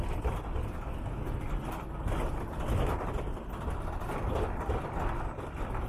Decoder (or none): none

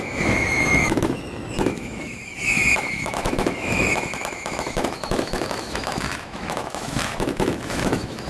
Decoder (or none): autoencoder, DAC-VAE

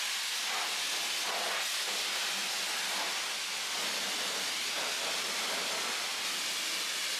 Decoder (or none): none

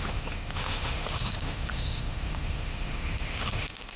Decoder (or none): autoencoder, DAC-VAE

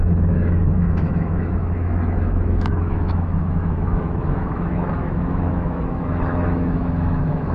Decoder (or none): autoencoder, DAC-VAE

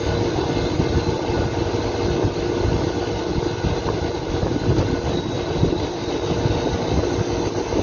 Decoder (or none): none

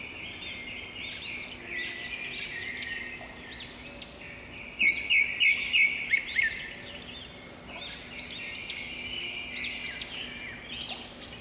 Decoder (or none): none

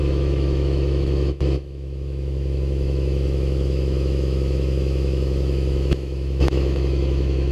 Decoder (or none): autoencoder, DAC-VAE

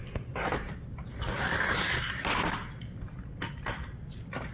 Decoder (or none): none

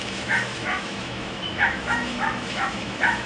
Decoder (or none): autoencoder, DAC-VAE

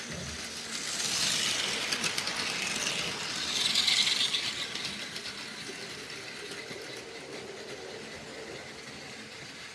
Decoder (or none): none